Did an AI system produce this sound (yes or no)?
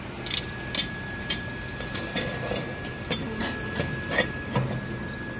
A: no